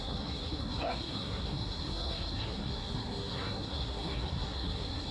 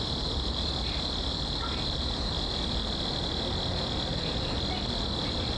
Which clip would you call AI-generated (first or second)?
first